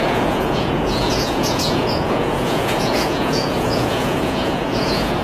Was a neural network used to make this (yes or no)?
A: yes